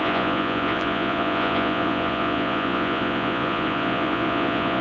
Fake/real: fake